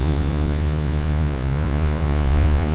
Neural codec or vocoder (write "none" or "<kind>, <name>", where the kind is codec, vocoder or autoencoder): vocoder, Vocos